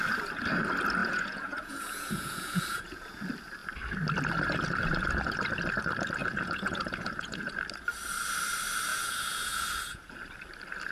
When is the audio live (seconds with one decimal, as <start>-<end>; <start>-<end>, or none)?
0.0-1.0; 3.2-6.2; 7.5-8.9; 10.1-10.9